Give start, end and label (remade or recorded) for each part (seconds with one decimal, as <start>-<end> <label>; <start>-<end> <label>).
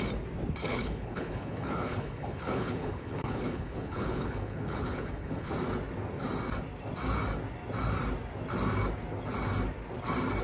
0.0-0.7 recorded; 0.7-5.5 remade; 5.5-10.4 recorded